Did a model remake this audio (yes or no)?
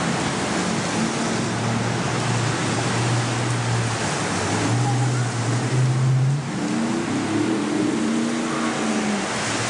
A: no